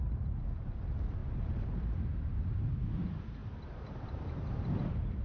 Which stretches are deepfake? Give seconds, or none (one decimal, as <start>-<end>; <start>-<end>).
0.0-5.2